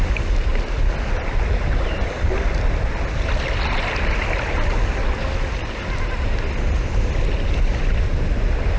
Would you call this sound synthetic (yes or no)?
no